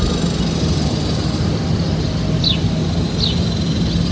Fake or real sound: real